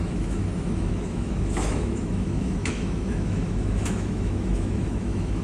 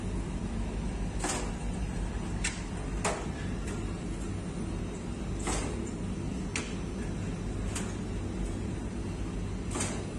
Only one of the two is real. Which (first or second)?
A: second